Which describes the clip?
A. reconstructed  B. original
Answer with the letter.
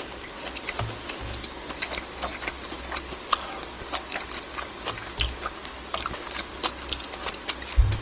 B